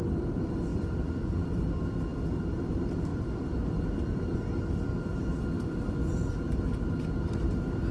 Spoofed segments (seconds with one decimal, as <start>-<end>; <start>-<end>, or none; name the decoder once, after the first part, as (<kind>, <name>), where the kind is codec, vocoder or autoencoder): 0.7-1.7 (vocoder, BigVGAN v2)